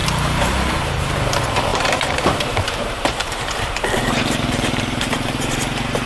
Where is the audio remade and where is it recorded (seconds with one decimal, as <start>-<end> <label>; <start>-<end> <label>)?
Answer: 0.0-6.1 remade